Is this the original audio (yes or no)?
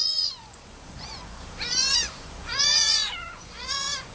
no